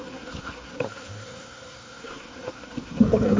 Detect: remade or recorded remade